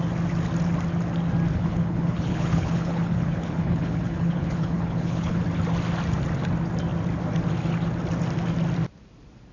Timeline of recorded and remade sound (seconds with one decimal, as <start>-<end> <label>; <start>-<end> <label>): 0.0-1.5 recorded; 1.5-5.4 remade; 5.4-9.5 recorded